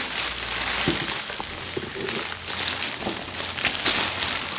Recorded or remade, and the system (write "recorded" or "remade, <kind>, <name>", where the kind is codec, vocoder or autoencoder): recorded